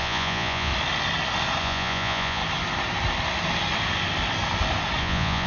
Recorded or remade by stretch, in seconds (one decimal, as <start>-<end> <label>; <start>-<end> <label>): 0.0-0.7 remade; 0.7-1.6 recorded; 1.6-2.4 remade; 2.4-5.0 recorded; 5.0-5.5 remade

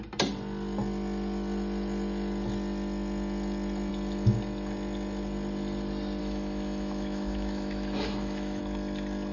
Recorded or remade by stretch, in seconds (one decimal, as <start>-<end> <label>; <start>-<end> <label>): 0.0-6.2 recorded; 6.2-8.6 remade; 8.6-9.3 recorded

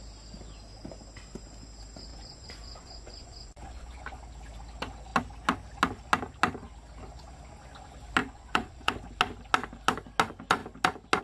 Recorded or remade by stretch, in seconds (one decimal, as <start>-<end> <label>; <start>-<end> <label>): 0.0-2.1 recorded; 2.1-4.2 remade; 4.2-8.2 recorded; 8.2-8.9 remade; 8.9-11.2 recorded

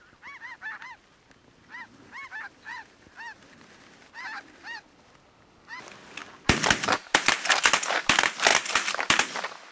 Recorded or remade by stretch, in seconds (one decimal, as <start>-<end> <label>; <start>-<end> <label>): 0.0-8.5 recorded; 8.5-9.1 remade; 9.1-9.7 recorded

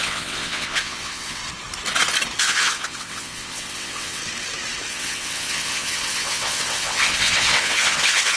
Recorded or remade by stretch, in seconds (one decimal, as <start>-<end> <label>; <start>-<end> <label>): 0.0-1.4 remade; 1.4-2.4 recorded; 2.4-4.2 remade; 4.2-4.9 recorded; 4.9-8.4 remade

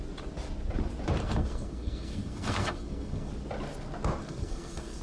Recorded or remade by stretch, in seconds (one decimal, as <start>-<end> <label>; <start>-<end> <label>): 0.0-1.2 recorded; 1.2-3.3 remade; 3.3-4.2 recorded; 4.2-5.0 remade